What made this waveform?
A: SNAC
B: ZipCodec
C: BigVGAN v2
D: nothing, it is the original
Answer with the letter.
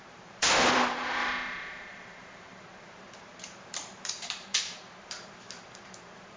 C